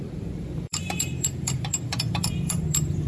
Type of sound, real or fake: fake